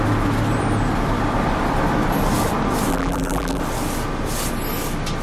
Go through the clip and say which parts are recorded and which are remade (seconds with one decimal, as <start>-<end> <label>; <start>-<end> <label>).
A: 0.0-2.9 recorded; 2.9-3.6 remade; 3.6-5.2 recorded